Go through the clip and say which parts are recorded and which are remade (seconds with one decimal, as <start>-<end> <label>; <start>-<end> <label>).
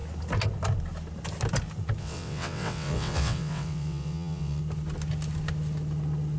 0.0-2.0 recorded; 2.0-4.6 remade; 4.6-6.4 recorded